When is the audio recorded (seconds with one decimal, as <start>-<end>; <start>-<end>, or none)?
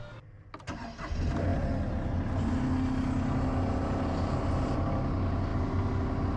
0.0-6.4